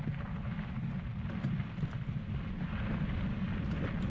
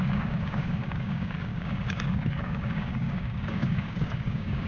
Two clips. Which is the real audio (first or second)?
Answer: first